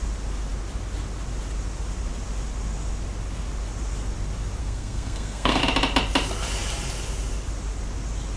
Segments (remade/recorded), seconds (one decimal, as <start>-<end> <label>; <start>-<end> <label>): 0.0-4.6 recorded; 4.6-5.6 remade; 5.6-8.4 recorded

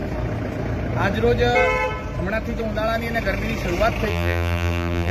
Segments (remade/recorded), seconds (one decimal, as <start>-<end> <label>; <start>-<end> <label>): 0.0-4.1 recorded; 4.1-5.1 remade

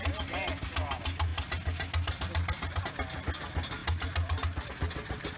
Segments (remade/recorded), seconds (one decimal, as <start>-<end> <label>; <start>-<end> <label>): 0.0-5.4 recorded

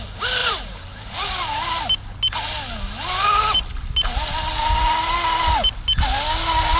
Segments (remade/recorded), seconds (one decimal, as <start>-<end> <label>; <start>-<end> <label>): 0.0-0.4 recorded; 0.4-1.1 remade; 1.1-6.8 recorded

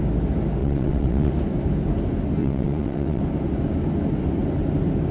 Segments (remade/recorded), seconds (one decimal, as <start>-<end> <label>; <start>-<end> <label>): 0.0-0.6 recorded; 0.6-1.3 remade; 1.3-2.4 recorded; 2.4-3.2 remade; 3.2-5.1 recorded

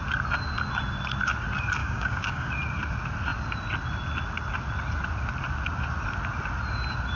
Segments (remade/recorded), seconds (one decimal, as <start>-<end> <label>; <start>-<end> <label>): 0.0-1.8 recorded; 1.8-2.5 remade; 2.5-7.2 recorded